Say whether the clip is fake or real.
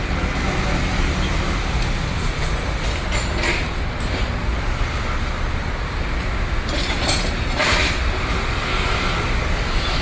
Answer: real